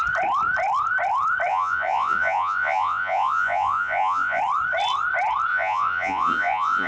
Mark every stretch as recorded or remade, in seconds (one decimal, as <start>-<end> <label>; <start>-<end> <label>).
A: 0.0-1.5 recorded; 1.5-4.4 remade; 4.4-5.5 recorded; 5.5-6.9 remade